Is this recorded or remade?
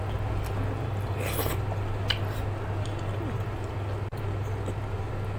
recorded